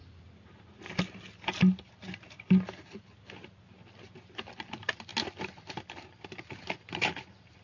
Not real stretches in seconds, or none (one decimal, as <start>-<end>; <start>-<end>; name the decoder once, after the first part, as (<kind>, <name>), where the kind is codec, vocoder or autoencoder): none